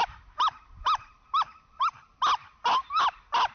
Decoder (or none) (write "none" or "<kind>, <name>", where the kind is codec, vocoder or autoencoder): none